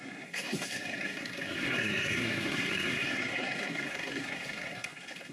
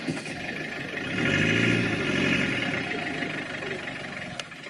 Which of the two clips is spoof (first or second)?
first